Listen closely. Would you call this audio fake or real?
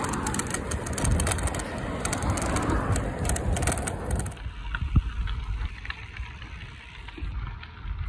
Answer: real